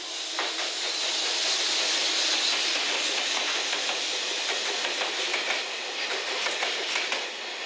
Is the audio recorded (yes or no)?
yes